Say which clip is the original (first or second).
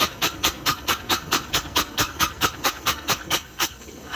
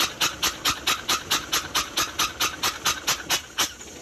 second